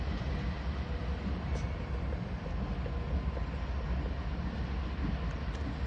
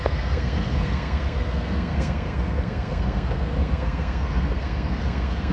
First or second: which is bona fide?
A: first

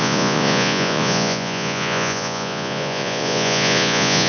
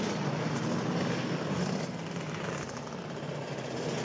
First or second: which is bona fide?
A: second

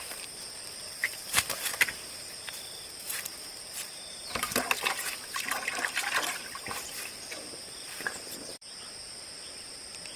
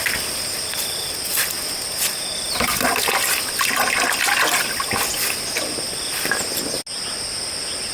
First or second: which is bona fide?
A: second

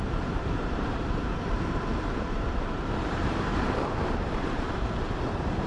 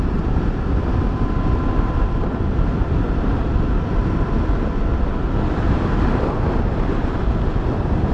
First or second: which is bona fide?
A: second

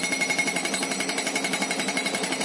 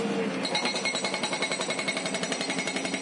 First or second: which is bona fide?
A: second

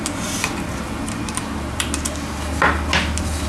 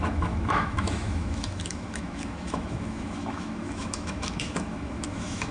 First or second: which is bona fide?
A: first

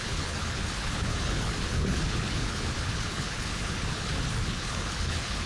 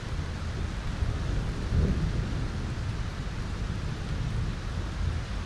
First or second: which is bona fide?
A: second